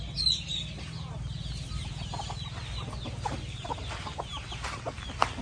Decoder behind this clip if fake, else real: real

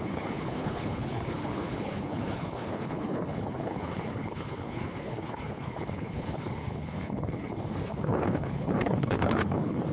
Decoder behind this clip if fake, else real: fake, codec, HILCodec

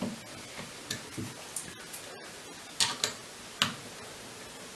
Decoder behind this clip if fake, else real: real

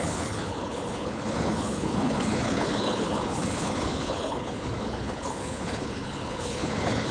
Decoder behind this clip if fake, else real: fake, codec, HILCodec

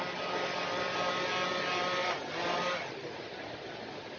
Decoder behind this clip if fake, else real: real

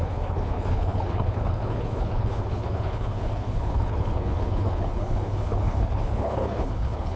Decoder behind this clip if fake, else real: fake, codec, HILCodec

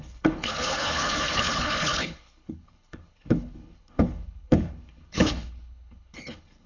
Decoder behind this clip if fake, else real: fake, codec, HILCodec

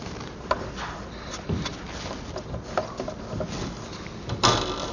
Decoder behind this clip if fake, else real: real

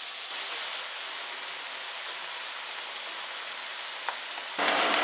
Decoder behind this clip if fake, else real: real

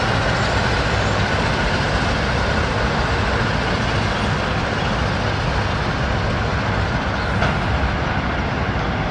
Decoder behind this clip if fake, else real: real